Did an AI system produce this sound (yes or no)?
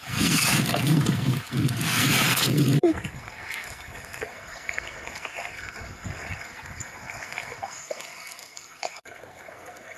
yes